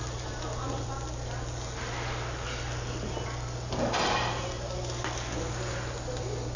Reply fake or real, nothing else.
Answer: real